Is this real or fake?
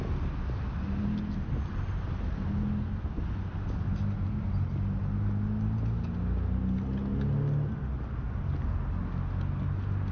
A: real